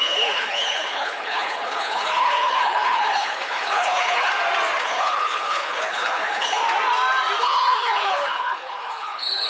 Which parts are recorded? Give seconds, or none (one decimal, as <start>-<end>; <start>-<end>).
4.3-4.8; 6.6-7.4